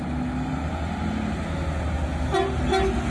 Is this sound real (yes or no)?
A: yes